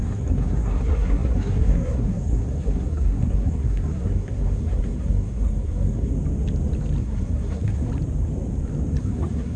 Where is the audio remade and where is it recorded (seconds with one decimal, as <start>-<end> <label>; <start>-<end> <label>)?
0.0-6.1 remade; 6.1-7.0 recorded; 7.0-7.9 remade; 7.9-9.0 recorded; 9.0-9.6 remade